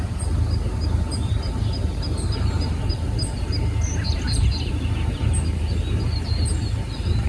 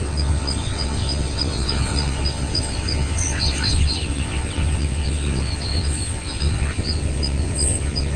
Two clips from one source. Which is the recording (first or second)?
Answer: first